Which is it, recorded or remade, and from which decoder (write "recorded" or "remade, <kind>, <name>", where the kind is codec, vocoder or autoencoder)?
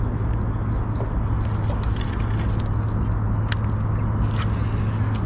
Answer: recorded